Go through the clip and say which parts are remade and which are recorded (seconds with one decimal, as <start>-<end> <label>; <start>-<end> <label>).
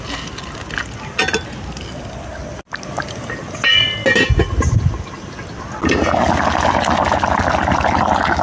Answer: 0.0-8.4 recorded